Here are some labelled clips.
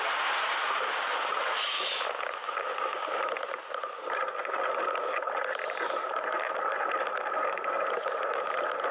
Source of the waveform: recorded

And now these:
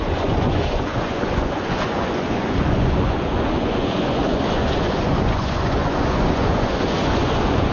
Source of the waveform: remade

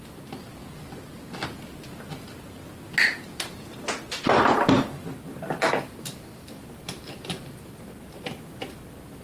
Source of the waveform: recorded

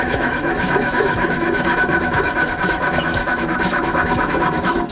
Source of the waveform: remade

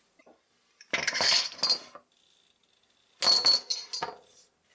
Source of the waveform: recorded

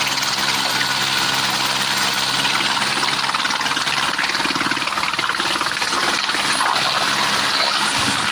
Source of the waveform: recorded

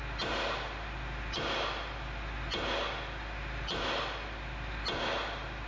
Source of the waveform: recorded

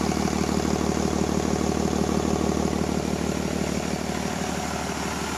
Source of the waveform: recorded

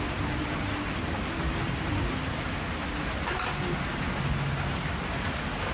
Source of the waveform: recorded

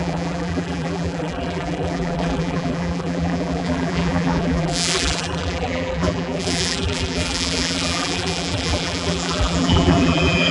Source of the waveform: remade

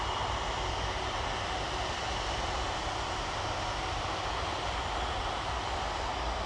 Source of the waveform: recorded